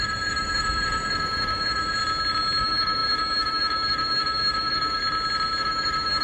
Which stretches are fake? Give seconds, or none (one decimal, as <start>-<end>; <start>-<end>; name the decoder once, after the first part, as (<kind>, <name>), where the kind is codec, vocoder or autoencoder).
0.0-2.0 (autoencoder, DAC-VAE); 2.6-5.0; 5.6-6.2